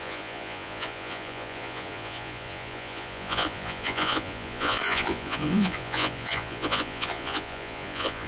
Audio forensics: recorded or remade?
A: remade